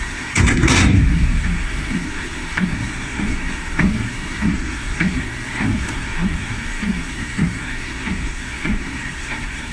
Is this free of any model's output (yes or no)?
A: no